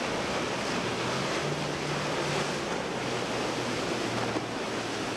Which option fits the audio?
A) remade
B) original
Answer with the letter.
B